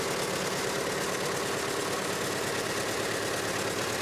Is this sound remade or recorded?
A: recorded